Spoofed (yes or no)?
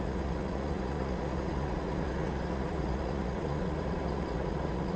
yes